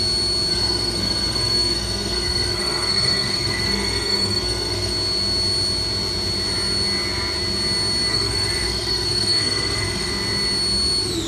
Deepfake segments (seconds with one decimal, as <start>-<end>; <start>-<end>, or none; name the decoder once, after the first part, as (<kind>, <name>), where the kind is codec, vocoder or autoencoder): 0.5-4.9 (codec, SNAC); 8.1-10.1